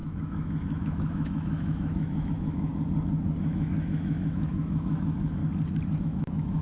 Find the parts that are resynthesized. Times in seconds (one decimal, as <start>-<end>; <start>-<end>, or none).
0.0-2.7; 3.5-5.4; 6.0-6.6